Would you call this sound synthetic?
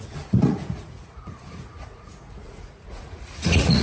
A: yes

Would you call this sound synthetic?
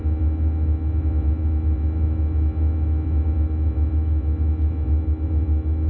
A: no